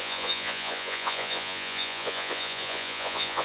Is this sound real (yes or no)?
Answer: no